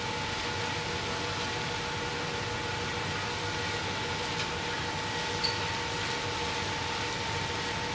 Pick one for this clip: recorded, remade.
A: recorded